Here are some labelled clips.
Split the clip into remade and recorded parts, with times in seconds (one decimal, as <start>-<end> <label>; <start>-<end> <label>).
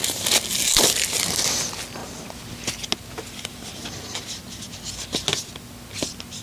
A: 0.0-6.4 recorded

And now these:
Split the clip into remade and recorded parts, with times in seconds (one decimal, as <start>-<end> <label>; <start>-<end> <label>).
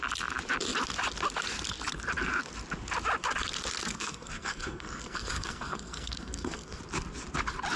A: 0.0-3.9 recorded; 3.9-6.8 remade; 6.8-7.8 recorded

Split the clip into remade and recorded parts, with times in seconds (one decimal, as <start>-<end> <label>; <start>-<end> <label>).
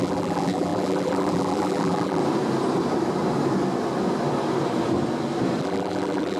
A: 0.0-2.2 remade; 2.2-5.6 recorded; 5.6-6.4 remade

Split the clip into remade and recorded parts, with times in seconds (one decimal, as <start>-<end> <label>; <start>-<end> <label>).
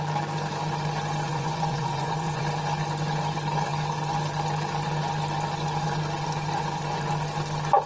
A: 0.0-1.3 recorded; 1.3-2.4 remade; 2.4-7.9 recorded